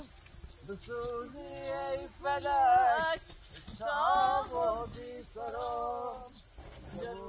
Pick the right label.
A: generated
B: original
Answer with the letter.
B